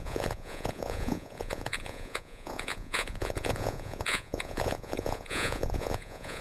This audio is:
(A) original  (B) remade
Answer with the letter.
B